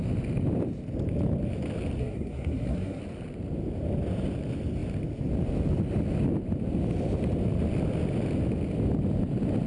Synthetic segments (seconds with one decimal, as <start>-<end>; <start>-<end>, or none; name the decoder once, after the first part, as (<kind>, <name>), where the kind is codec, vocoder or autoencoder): 2.0-3.0 (codec, SNAC)